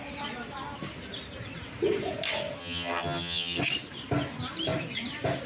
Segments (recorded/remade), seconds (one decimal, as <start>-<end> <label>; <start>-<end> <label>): 0.0-2.6 recorded; 2.6-3.6 remade; 3.6-5.5 recorded